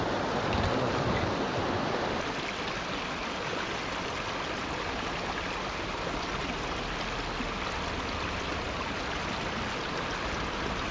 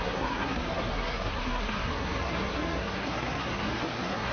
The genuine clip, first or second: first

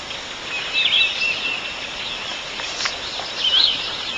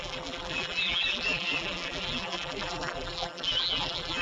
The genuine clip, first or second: first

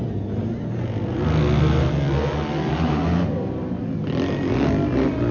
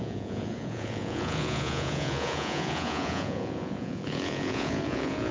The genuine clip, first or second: first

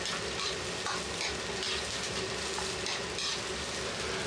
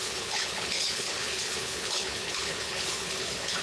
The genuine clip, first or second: first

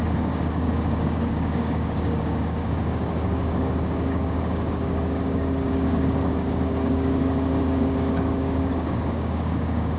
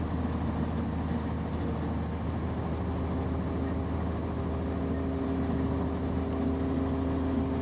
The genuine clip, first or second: second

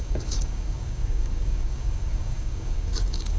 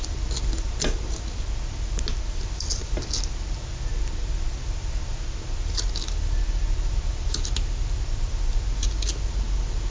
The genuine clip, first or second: second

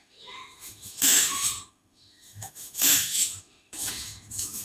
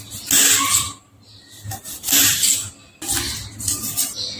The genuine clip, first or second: second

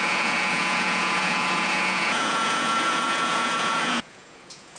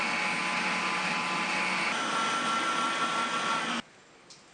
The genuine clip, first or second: second